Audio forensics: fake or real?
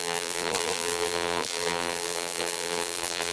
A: fake